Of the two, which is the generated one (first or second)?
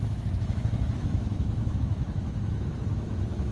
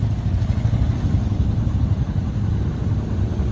first